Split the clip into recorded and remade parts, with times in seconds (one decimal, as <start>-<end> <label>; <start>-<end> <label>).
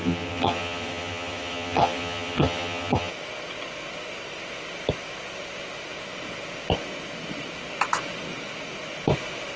0.0-3.1 remade; 3.1-9.6 recorded